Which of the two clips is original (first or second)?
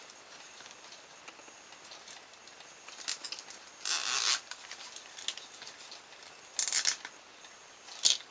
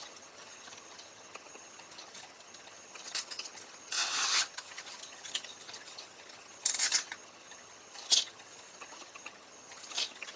first